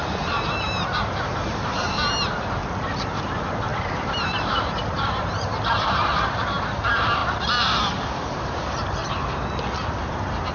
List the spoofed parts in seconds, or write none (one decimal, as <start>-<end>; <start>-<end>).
0.0-2.6; 3.2-9.0; 10.0-10.5